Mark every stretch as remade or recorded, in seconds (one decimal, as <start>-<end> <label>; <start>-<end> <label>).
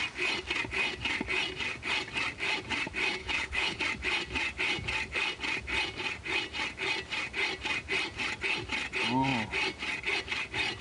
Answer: 0.0-3.2 recorded; 3.2-3.8 remade; 3.8-10.8 recorded